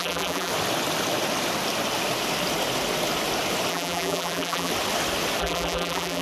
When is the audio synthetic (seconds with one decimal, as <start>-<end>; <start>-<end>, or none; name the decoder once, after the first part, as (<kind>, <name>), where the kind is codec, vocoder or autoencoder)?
0.0-0.5 (vocoder, BigVGAN v2); 3.7-4.7; 5.4-6.2